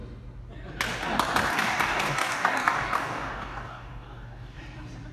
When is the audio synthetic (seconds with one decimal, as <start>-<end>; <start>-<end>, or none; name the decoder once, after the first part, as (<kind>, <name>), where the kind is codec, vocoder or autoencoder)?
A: 1.5-4.6 (codec, DAC)

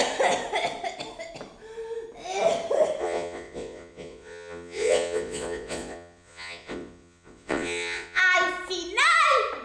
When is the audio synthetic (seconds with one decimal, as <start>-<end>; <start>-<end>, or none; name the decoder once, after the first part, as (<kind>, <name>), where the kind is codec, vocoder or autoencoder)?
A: 3.0-8.2 (vocoder, Vocos)

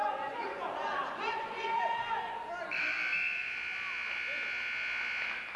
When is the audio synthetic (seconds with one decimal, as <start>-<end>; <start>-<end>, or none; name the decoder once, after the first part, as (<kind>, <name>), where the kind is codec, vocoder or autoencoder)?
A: 0.0-2.5 (vocoder, Vocos)

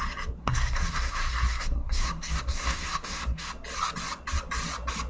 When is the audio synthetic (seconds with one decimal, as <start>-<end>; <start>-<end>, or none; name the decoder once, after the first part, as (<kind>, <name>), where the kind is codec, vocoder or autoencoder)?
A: 0.4-3.5 (codec, SNAC)

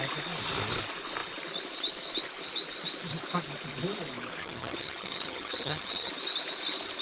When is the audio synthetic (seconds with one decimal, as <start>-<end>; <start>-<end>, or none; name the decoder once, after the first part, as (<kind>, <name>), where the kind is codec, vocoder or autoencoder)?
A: 4.4-6.1 (vocoder, HiFi-GAN)

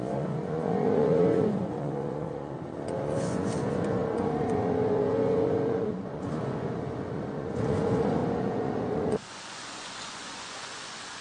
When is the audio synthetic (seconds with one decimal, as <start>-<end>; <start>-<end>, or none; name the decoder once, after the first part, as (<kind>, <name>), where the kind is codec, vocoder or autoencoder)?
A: 0.0-11.2 (vocoder, Vocos)

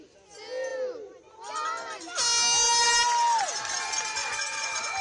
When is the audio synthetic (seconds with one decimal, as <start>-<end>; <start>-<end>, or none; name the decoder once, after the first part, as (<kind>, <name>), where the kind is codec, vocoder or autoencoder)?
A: 4.2-5.0 (vocoder, Vocos)

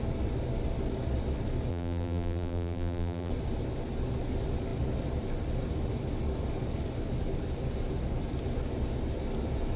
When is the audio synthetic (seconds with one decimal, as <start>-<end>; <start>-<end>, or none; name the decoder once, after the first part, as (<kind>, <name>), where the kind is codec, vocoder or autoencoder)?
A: 1.7-3.3 (vocoder, BigVGAN v2)